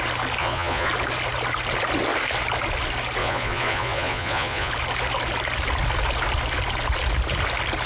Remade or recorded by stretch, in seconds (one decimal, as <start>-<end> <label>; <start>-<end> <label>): 0.0-0.4 recorded; 0.4-0.9 remade; 0.9-3.2 recorded; 3.2-4.7 remade; 4.7-7.9 recorded